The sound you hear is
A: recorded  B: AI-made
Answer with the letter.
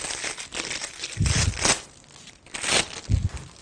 A